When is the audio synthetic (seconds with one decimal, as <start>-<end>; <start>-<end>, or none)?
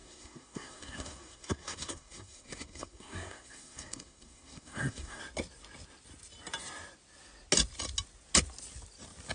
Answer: 0.0-5.2